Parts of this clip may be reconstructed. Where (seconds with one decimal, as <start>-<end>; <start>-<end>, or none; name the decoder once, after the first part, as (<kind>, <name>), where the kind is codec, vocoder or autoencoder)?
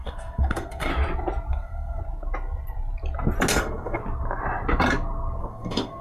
0.0-0.9 (codec, SNAC); 1.5-2.0; 3.5-4.0; 5.4-6.0